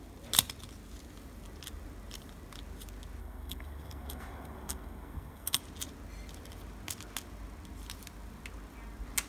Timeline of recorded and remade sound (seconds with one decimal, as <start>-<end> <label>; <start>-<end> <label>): 0.0-3.2 recorded; 3.2-5.6 remade; 5.6-9.3 recorded